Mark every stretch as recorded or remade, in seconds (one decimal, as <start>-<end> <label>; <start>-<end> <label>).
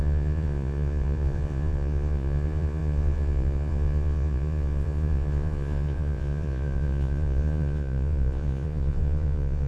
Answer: 0.0-9.7 remade